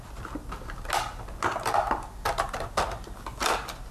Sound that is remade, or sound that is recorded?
recorded